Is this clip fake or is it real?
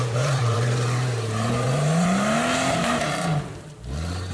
fake